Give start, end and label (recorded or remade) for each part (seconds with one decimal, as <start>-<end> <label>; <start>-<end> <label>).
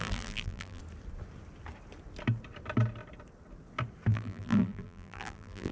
0.0-0.8 remade; 0.8-4.1 recorded; 4.1-5.7 remade